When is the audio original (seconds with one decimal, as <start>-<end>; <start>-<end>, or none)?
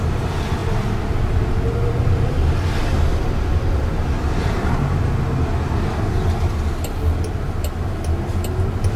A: 0.0-3.1; 5.2-9.0